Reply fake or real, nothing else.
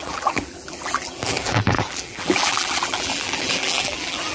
fake